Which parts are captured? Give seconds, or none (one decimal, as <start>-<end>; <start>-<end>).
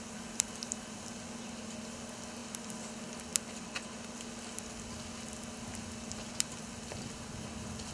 0.0-7.9